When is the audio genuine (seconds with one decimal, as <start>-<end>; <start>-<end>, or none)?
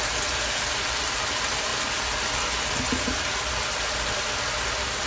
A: 0.0-5.1